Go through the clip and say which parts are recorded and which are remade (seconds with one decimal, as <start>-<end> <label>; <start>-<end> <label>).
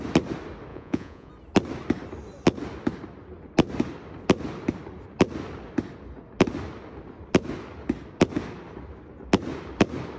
0.0-0.7 recorded; 0.7-1.3 remade; 1.3-10.2 recorded